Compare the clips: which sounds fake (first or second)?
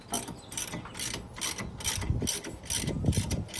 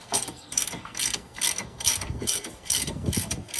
second